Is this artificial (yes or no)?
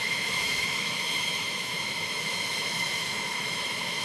yes